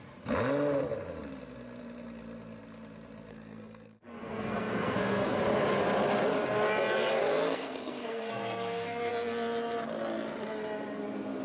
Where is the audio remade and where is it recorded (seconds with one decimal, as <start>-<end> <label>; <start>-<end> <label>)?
0.0-3.3 recorded; 3.3-5.4 remade; 5.4-7.2 recorded; 7.2-9.1 remade; 9.1-11.4 recorded